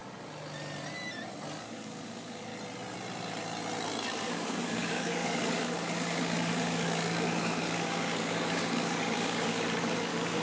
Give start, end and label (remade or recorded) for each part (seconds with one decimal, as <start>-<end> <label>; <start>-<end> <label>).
0.0-1.6 recorded; 1.6-2.5 remade; 2.5-4.1 recorded; 4.1-10.4 remade